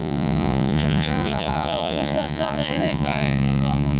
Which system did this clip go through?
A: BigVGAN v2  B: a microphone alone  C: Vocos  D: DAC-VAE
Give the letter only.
C